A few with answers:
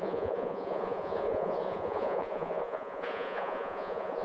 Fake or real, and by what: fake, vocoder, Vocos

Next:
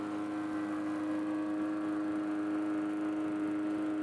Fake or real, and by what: real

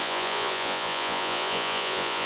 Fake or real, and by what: fake, vocoder, Vocos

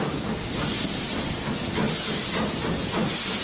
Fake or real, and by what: real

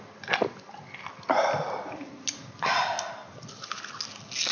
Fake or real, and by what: real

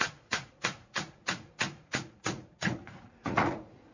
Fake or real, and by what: fake, vocoder, Vocos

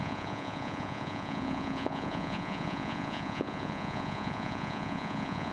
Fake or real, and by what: fake, vocoder, Vocos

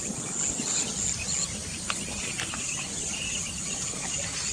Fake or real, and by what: real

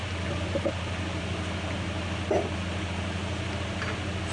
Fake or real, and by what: real